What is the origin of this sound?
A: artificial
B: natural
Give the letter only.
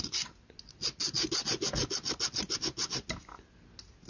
B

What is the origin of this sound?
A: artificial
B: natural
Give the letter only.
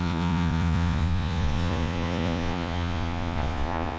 A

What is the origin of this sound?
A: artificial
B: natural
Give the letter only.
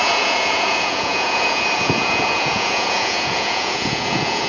A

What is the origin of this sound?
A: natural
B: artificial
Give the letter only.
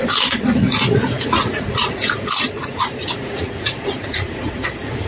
B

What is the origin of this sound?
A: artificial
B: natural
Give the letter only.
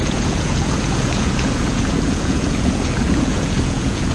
A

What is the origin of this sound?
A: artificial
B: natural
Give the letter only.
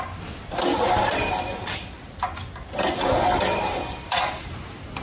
B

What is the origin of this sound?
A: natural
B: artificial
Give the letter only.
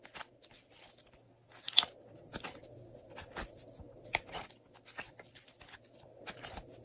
A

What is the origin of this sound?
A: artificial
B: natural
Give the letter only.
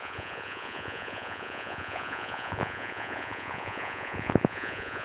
A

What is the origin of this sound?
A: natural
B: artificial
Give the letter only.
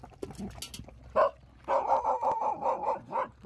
A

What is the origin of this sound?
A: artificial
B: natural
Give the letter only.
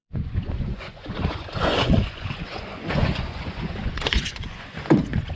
A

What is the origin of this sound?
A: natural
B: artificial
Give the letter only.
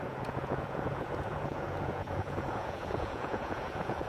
B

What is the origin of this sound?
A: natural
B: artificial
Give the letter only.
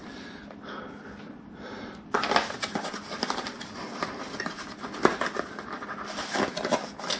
A